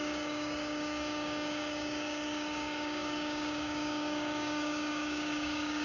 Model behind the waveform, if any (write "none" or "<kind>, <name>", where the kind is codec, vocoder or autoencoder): codec, DAC